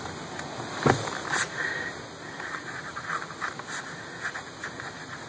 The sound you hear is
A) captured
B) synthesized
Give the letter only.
A